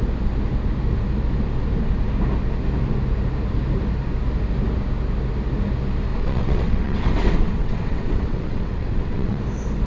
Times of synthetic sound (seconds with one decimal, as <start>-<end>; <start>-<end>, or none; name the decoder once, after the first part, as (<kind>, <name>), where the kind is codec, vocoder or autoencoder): 6.1-9.4 (vocoder, WaveNeXt)